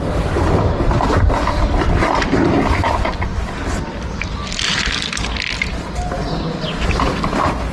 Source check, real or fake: real